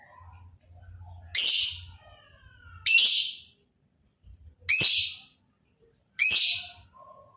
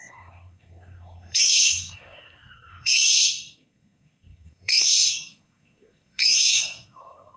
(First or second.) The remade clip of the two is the second